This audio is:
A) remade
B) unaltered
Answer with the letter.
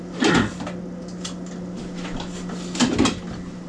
B